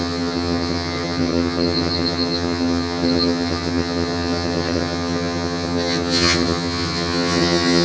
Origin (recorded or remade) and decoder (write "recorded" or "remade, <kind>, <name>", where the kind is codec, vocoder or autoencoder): remade, vocoder, HiFi-GAN